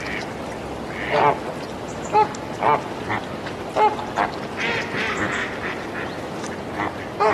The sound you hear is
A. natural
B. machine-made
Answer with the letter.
A